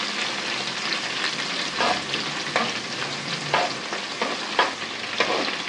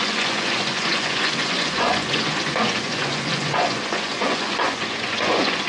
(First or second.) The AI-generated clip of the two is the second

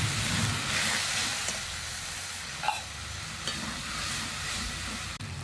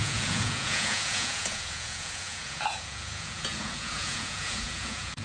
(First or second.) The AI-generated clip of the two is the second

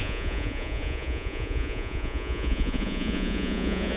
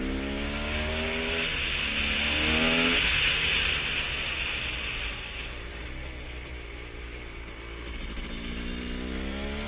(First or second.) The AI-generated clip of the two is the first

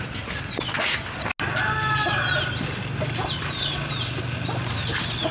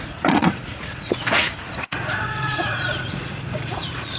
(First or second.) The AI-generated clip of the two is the second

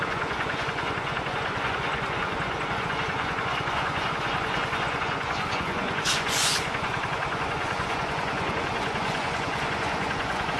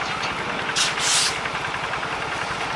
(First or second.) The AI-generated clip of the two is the first